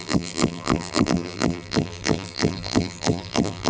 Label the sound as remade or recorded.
remade